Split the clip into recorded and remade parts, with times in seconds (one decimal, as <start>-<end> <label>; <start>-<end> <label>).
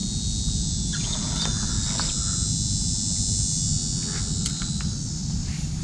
0.0-5.8 recorded